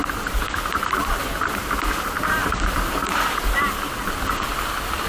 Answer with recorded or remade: remade